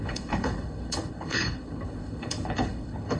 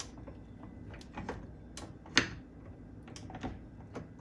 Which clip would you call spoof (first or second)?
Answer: first